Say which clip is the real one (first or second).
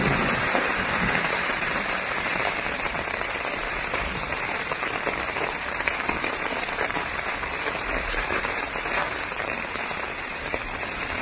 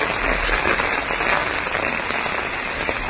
second